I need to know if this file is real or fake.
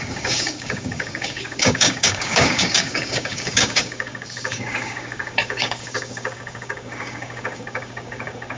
fake